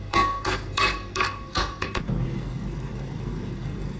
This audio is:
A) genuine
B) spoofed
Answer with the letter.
B